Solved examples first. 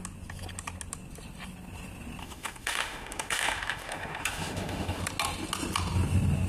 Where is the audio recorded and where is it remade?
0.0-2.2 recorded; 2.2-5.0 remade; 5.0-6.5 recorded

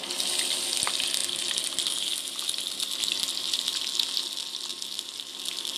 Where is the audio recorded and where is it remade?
0.0-5.8 recorded

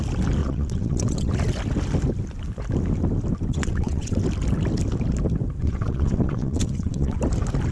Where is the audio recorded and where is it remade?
0.0-0.4 recorded; 0.4-1.3 remade; 1.3-3.5 recorded; 3.5-4.2 remade; 4.2-5.6 recorded; 5.6-7.2 remade; 7.2-7.7 recorded

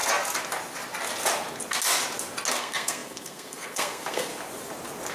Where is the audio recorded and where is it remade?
0.0-2.5 recorded; 2.5-4.3 remade; 4.3-5.1 recorded

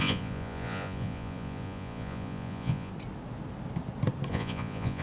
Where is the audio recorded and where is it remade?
0.0-2.9 remade; 2.9-4.3 recorded; 4.3-5.0 remade

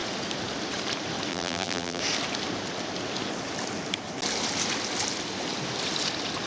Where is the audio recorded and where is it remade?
0.0-1.3 recorded; 1.3-2.0 remade; 2.0-6.5 recorded

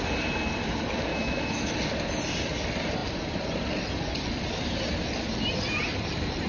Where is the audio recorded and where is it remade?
0.0-1.1 recorded; 1.1-1.7 remade; 1.7-6.5 recorded

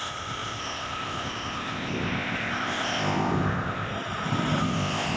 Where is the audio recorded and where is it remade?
0.0-3.9 remade; 3.9-4.6 recorded; 4.6-5.2 remade